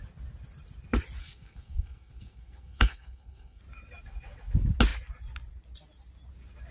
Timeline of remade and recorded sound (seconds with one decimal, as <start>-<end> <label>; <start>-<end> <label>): 0.0-1.2 recorded; 1.2-3.6 remade; 3.6-6.7 recorded